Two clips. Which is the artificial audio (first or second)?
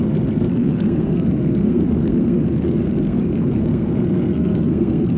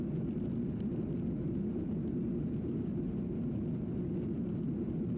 first